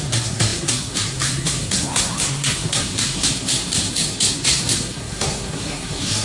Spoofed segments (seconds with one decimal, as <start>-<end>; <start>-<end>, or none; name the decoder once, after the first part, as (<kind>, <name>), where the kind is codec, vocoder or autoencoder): 0.0-6.2 (codec, SNAC)